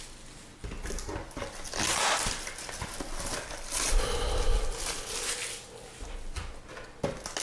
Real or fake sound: real